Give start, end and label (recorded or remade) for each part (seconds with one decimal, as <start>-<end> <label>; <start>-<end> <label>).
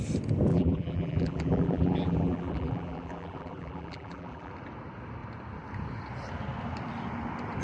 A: 0.0-0.5 recorded; 0.5-4.5 remade; 4.5-7.6 recorded